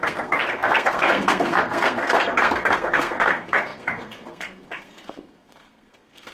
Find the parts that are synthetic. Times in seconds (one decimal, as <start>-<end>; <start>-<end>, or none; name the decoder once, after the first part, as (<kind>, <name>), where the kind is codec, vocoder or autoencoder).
0.0-6.3 (codec, SNAC)

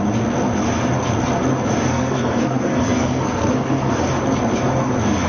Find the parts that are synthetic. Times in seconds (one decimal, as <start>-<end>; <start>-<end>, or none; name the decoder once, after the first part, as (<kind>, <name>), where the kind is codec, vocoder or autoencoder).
1.9-3.9 (codec, SNAC)

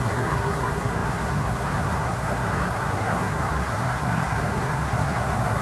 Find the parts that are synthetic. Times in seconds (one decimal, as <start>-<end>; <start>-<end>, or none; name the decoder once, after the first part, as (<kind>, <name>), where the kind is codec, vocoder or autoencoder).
0.0-5.6 (codec, SNAC)

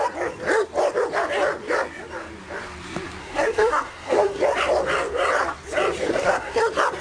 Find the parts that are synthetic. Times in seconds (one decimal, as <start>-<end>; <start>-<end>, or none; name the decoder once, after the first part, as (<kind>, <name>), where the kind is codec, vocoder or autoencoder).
3.2-4.4 (codec, SNAC); 6.1-6.6

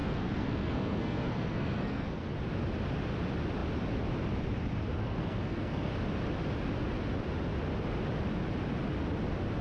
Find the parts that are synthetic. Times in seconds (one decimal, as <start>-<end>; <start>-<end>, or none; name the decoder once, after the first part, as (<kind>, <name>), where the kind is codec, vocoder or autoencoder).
0.0-2.3 (codec, SNAC); 5.0-5.9

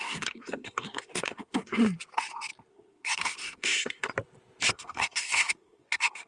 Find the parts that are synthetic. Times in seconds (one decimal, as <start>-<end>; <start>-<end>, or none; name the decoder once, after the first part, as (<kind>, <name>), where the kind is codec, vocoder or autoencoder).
0.0-1.8 (codec, SNAC); 2.7-4.1; 4.7-6.3

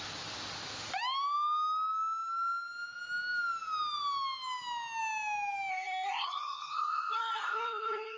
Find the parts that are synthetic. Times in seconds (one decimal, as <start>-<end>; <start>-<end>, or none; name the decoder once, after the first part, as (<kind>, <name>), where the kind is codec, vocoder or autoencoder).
5.7-8.2 (codec, SNAC)

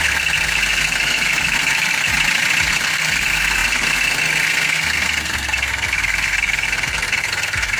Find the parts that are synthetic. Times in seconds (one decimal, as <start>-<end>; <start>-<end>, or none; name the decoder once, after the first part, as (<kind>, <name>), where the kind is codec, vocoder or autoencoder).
0.0-2.1 (codec, SNAC); 2.7-7.8